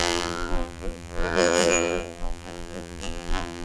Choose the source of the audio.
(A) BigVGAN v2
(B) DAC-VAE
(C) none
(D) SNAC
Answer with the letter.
A